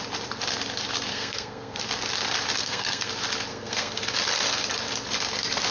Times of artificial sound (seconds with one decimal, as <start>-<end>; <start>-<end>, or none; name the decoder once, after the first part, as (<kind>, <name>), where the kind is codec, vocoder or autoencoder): 1.1-1.8 (codec, SNAC); 2.6-3.1; 3.5-4.0